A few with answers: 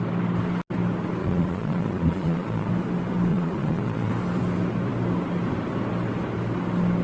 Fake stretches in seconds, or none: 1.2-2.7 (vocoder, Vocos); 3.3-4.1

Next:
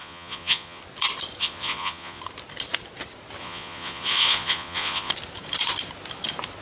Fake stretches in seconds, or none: 0.0-0.8 (vocoder, Vocos); 1.4-2.2; 3.4-5.1

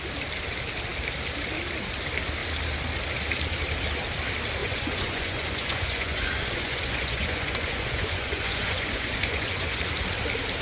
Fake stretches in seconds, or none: 4.6-9.8 (vocoder, Vocos)

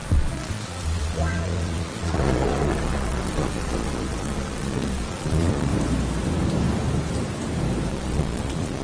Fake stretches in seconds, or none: 0.0-5.7 (vocoder, Vocos); 7.9-8.8

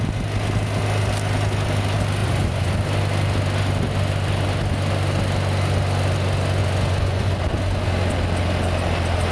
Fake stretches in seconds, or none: 2.2-2.7 (vocoder, Vocos); 6.6-7.3

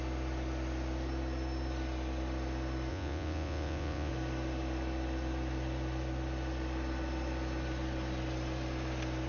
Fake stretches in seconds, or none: 2.9-4.1 (vocoder, Vocos)